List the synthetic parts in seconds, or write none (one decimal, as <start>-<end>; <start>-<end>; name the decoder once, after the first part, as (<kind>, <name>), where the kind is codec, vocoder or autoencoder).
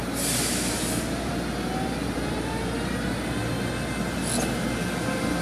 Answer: none